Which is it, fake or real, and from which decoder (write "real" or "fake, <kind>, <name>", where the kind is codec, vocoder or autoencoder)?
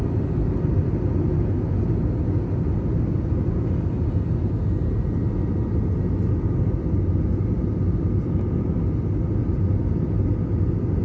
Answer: real